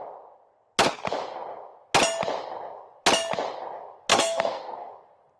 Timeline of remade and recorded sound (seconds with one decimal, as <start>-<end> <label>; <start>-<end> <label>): 0.0-4.1 recorded; 4.1-4.9 remade; 4.9-5.4 recorded